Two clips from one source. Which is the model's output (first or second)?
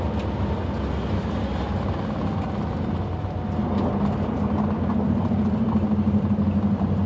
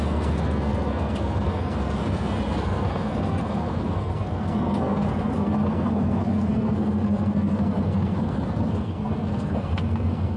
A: second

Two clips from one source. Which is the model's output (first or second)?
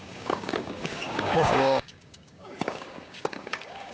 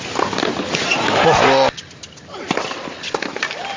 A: first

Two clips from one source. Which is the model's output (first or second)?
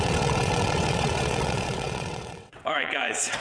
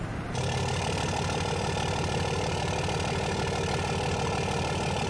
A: first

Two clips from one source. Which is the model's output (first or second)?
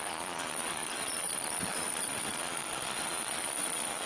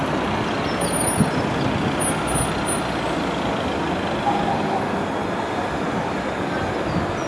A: first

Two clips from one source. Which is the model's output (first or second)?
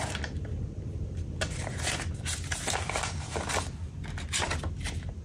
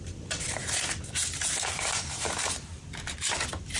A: second